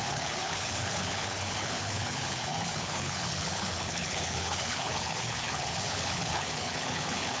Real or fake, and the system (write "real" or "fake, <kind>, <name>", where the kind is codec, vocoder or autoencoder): fake, codec, HILCodec